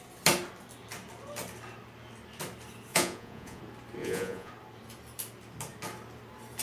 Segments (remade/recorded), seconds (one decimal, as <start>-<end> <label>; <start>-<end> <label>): 0.0-2.9 recorded; 2.9-3.6 remade; 3.6-4.0 recorded; 4.0-4.5 remade; 4.5-6.6 recorded